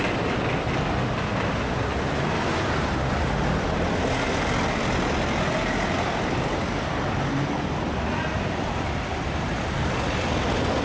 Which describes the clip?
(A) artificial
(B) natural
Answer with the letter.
B